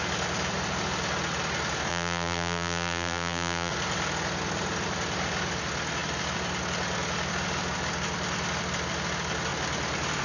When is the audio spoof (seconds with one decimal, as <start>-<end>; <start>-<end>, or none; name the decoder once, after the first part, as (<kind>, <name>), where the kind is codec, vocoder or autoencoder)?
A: 1.9-3.7 (vocoder, BigVGAN v2)